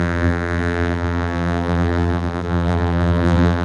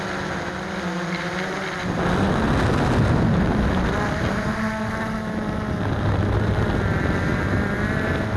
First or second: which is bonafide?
second